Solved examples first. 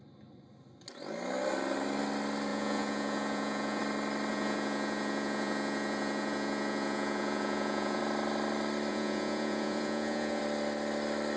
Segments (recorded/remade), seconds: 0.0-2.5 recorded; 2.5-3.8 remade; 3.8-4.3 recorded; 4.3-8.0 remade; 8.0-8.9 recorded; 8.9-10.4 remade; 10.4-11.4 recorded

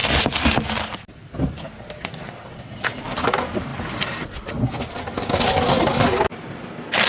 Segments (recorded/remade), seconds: 0.0-7.1 recorded

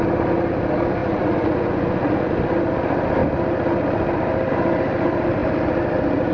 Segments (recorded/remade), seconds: 0.0-1.0 recorded; 1.0-2.3 remade; 2.3-6.3 recorded